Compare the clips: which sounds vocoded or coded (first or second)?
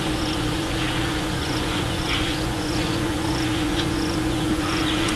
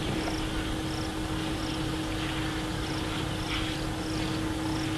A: first